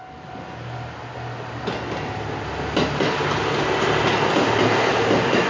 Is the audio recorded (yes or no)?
yes